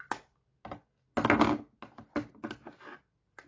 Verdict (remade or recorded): recorded